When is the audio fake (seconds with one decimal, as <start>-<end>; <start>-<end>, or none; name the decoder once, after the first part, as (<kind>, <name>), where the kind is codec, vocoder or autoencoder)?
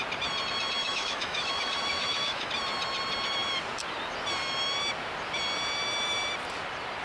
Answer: 0.8-2.5 (autoencoder, DAC-VAE)